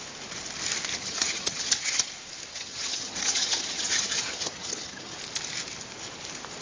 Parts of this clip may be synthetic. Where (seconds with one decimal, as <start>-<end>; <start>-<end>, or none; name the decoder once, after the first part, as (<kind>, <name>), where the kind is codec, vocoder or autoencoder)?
1.0-2.1 (vocoder, HiFi-GAN); 2.5-5.2